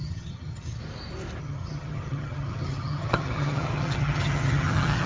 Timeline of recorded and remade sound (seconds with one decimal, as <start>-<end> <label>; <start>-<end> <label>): 0.0-0.8 remade; 0.8-1.4 recorded; 1.4-5.1 remade